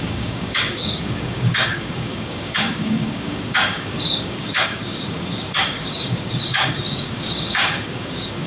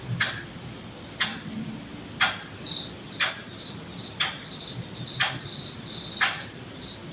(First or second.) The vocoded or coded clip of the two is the first